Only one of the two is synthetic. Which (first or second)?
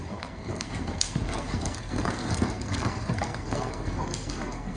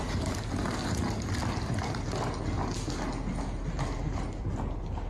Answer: first